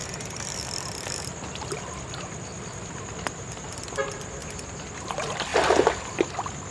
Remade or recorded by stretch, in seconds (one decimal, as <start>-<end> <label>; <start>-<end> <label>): 0.0-6.7 recorded